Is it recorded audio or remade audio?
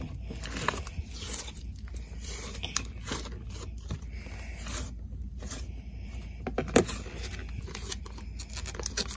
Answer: recorded